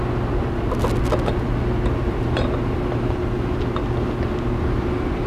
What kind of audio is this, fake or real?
real